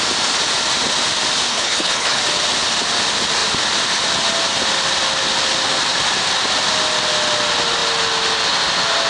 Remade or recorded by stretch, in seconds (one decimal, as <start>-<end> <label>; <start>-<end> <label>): 0.0-1.5 recorded; 1.5-2.2 remade; 2.2-9.1 recorded

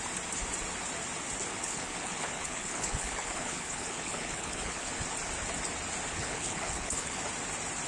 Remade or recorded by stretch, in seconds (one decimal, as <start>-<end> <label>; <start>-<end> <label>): 0.0-1.5 recorded; 1.5-4.9 remade; 4.9-6.1 recorded; 6.1-7.2 remade; 7.2-7.9 recorded

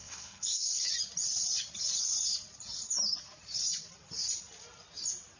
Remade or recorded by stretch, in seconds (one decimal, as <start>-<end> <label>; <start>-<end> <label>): 0.0-0.9 remade; 0.9-5.4 recorded

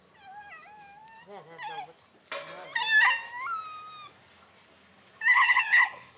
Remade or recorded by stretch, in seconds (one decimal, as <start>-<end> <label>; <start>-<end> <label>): 0.0-5.3 recorded; 5.3-6.2 remade

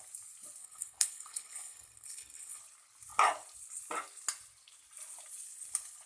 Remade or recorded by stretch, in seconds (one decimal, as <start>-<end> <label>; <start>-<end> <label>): 0.0-0.6 recorded; 0.6-2.6 remade; 2.6-6.1 recorded

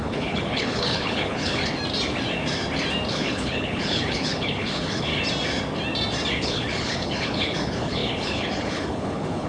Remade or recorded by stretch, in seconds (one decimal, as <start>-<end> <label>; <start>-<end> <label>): 0.0-1.6 remade; 1.6-3.1 recorded; 3.1-5.1 remade; 5.1-6.3 recorded; 6.3-9.5 remade

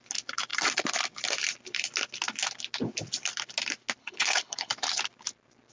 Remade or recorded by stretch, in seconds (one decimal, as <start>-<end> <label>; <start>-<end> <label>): 0.0-4.0 recorded; 4.0-4.7 remade; 4.7-5.7 recorded